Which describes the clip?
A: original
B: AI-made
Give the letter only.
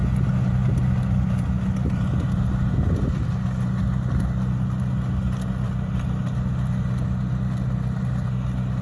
A